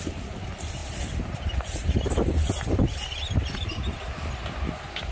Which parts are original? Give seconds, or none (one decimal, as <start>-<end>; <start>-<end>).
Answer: 0.0-0.8; 2.8-5.1

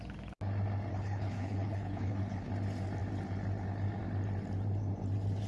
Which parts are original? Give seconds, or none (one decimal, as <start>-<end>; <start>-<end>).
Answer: 0.0-0.9; 2.5-5.5

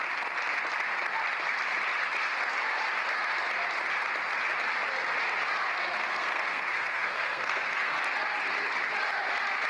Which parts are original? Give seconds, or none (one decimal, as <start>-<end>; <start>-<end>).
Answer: 0.0-6.0; 7.9-9.7